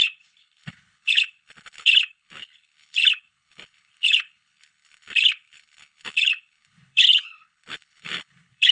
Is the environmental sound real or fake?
fake